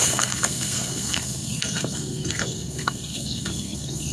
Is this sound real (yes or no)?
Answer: no